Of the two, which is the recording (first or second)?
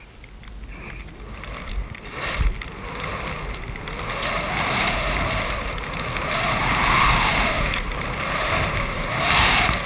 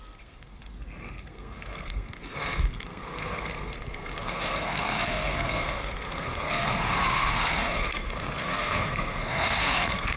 first